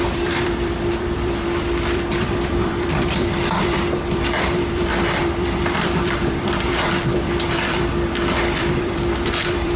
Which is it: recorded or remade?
remade